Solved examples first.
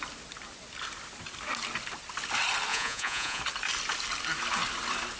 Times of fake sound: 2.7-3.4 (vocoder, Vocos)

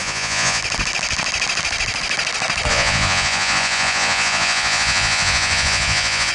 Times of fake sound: 0.0-0.6 (vocoder, Vocos); 2.7-6.3

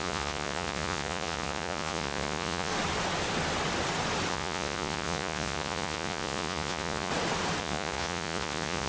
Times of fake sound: 0.0-2.7 (vocoder, Vocos); 4.3-7.1; 7.6-8.9

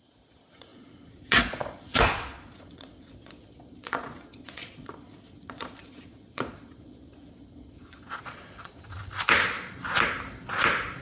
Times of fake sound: 0.0-9.0 (vocoder, Vocos)

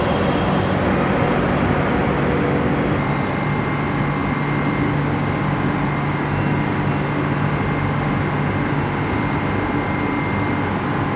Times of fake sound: none

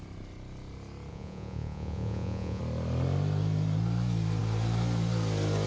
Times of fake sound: 1.1-2.6 (vocoder, Vocos)